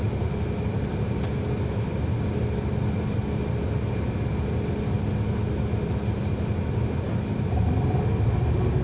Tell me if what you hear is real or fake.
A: real